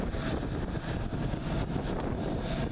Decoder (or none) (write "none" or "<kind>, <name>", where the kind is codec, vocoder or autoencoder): none